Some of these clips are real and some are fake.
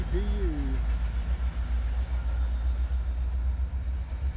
real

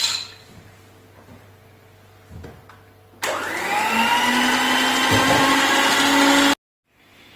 real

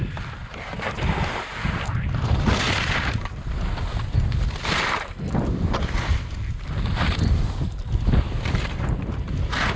real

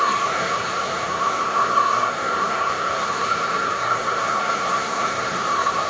fake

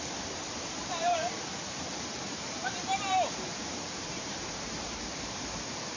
fake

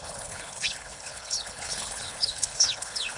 fake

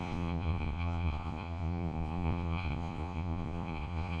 fake